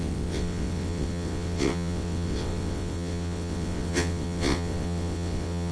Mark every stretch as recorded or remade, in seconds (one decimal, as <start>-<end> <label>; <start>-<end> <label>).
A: 0.0-5.7 remade